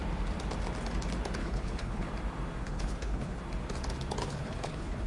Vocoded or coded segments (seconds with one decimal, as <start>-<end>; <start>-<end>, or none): 1.4-2.1; 2.6-3.4; 4.2-5.1